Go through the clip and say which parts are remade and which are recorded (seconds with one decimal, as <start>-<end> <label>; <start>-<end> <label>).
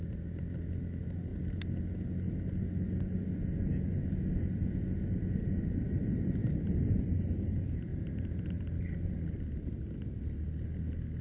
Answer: 0.0-11.2 recorded